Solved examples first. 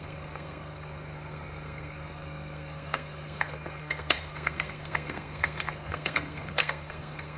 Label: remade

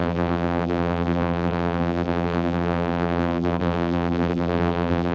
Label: remade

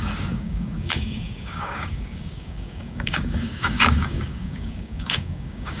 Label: remade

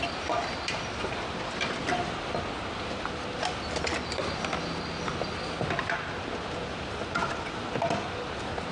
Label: recorded